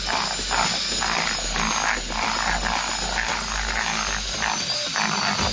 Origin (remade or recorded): recorded